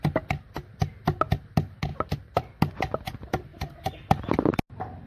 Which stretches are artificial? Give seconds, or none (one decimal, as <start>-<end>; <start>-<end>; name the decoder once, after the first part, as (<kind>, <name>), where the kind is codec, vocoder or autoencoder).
none